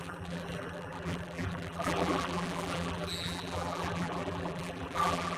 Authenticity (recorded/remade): remade